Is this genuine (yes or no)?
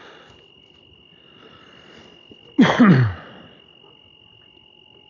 yes